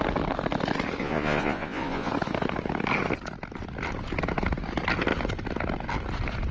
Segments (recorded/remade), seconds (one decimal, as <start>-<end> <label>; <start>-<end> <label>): 0.0-1.0 recorded; 1.0-2.1 remade; 2.1-6.5 recorded